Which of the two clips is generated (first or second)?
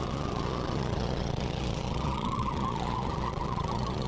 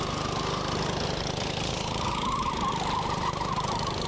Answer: first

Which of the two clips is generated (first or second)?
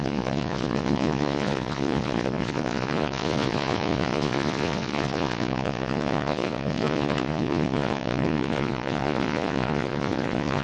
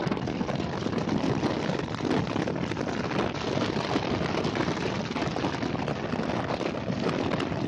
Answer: first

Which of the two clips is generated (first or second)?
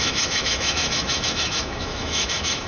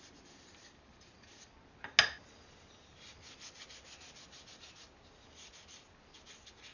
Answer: first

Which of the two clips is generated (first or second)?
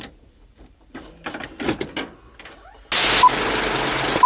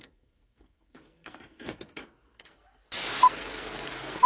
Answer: second